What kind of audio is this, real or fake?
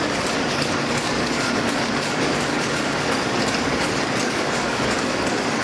fake